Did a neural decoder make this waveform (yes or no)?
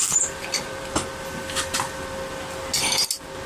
no